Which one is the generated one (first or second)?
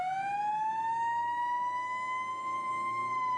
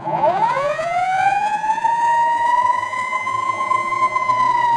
second